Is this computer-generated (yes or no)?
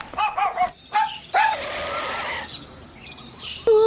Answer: no